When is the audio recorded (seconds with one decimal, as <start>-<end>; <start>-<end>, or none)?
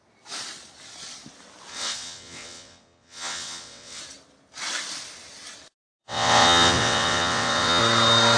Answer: 0.0-1.7; 4.0-6.0; 7.8-8.4